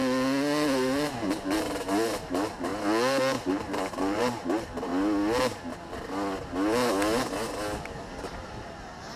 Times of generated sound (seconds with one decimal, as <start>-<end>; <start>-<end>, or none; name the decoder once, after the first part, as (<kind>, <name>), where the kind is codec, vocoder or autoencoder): 2.2-2.7 (vocoder, BigVGAN v2); 3.5-4.9; 8.2-9.2